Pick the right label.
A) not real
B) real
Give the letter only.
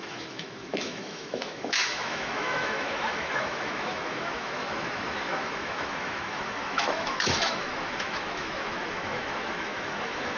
A